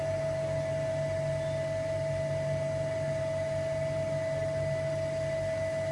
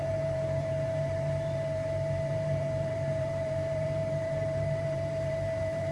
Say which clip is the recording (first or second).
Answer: first